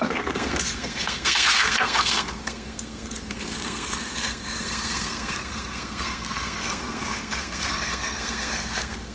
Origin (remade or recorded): remade